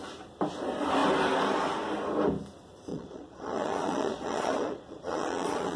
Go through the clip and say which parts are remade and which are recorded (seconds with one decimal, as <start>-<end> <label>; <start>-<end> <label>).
0.0-2.9 recorded; 2.9-5.8 remade